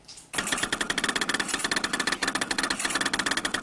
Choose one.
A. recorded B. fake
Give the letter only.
A